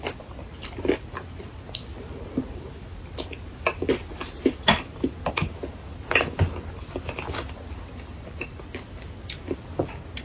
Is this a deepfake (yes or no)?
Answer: no